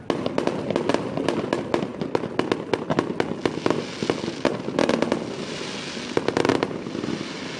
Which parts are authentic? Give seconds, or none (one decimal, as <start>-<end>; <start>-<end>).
0.0-7.6